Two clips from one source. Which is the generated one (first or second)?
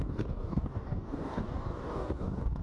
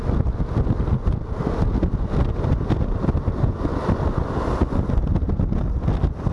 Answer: first